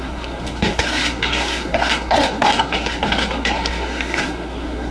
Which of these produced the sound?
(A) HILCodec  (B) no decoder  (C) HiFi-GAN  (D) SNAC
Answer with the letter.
D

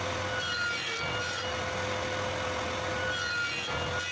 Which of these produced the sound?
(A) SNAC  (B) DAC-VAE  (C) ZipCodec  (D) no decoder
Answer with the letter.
D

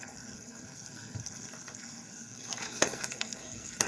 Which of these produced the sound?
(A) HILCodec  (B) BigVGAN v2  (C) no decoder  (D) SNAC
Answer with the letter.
D